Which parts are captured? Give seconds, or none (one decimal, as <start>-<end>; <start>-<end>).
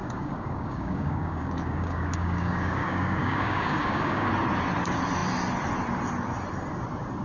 4.3-7.2